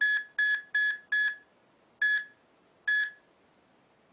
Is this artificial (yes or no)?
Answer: no